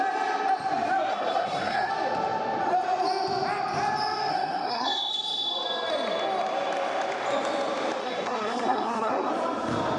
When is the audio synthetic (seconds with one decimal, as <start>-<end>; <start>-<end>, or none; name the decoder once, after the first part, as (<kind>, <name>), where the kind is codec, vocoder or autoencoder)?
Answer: 1.1-1.9 (codec, SNAC); 4.3-5.1; 8.0-9.3